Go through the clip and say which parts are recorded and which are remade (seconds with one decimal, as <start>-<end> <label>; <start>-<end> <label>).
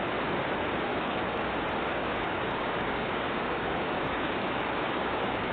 0.0-0.9 recorded; 0.9-1.5 remade; 1.5-1.9 recorded; 1.9-5.5 remade